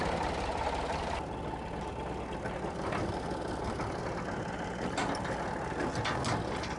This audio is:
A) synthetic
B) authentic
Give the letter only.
B